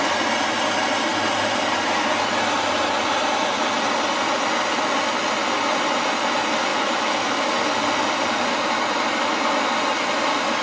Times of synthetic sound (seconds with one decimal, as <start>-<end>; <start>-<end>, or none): 6.7-7.5